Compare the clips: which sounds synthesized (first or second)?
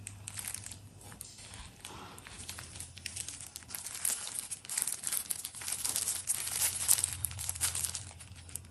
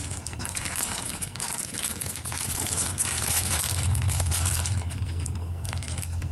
second